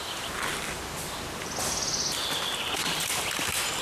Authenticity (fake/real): real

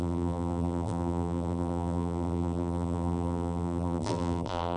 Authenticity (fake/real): fake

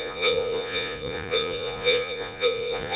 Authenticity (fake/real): fake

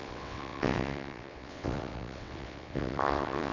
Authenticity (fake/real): fake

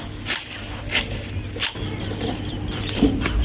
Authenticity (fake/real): real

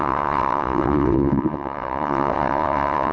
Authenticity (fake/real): fake